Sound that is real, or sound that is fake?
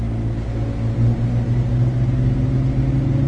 real